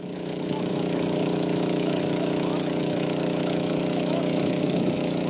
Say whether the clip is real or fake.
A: fake